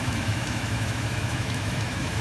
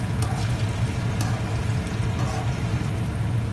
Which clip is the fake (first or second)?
first